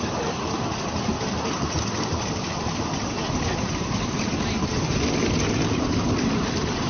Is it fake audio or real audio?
real